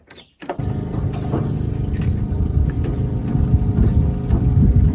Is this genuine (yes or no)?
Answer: yes